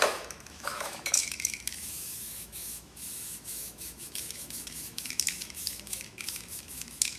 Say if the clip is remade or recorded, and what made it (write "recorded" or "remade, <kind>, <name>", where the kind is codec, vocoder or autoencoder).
remade, autoencoder, DAC-VAE